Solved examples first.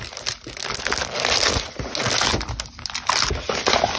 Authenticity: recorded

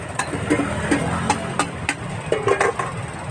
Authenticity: recorded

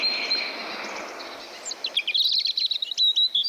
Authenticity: recorded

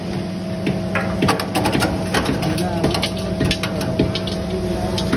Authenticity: recorded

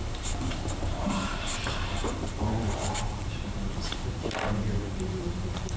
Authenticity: remade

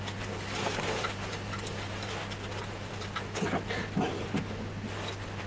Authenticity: recorded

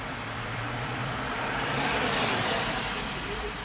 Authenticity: remade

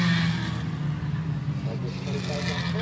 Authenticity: recorded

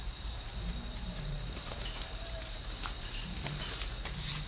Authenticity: remade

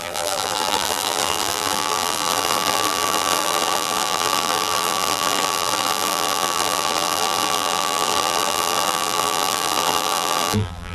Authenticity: remade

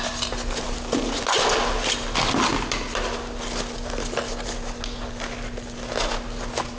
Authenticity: recorded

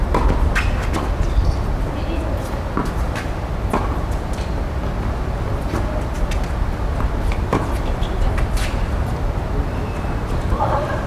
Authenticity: recorded